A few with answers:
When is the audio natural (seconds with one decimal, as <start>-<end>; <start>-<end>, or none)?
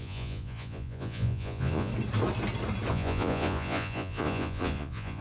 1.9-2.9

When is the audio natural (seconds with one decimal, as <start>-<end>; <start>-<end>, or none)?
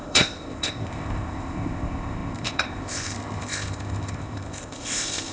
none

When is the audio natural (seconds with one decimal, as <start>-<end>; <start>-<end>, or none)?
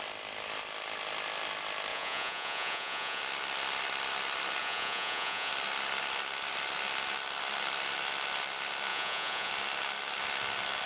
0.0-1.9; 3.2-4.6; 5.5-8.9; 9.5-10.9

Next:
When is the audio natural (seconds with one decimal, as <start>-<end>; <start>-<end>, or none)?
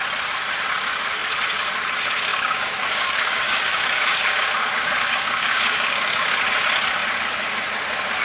0.0-2.3; 6.4-8.2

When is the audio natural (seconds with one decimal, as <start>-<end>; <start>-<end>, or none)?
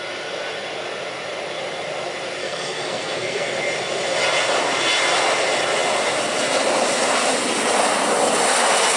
0.0-2.4; 3.5-9.0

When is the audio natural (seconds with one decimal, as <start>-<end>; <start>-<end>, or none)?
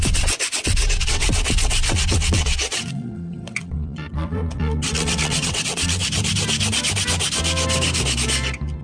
6.0-8.8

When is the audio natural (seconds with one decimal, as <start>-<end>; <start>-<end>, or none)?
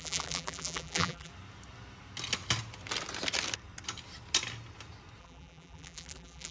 1.3-5.2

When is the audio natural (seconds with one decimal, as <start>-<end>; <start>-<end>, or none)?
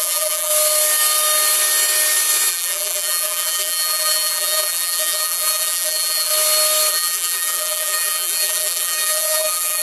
0.5-2.5; 6.3-6.9